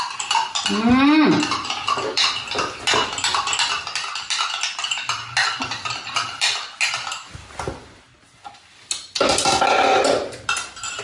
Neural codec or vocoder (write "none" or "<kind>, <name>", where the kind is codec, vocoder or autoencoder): none